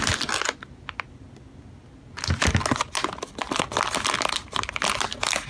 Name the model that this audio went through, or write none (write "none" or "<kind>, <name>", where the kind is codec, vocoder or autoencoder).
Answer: none